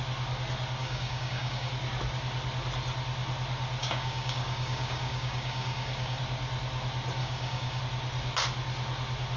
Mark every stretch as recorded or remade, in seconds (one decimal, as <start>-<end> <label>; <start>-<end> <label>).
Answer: 0.0-0.8 recorded; 0.8-1.7 remade; 1.7-3.8 recorded; 3.8-6.2 remade; 6.2-7.2 recorded; 7.2-7.8 remade; 7.8-9.4 recorded